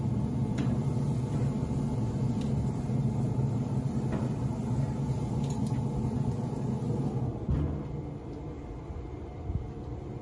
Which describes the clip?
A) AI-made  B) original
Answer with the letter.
B